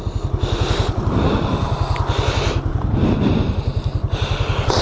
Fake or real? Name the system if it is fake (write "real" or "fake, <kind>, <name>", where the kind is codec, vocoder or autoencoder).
real